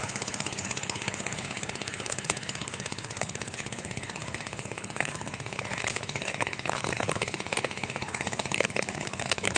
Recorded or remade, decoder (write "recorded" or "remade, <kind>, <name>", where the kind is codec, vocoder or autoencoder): remade, codec, HILCodec